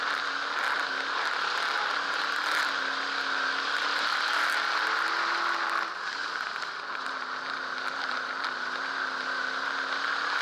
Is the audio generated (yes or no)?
no